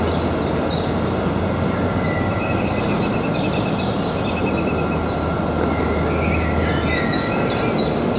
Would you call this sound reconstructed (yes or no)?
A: no